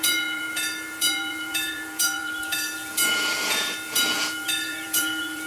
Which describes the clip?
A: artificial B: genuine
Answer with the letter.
A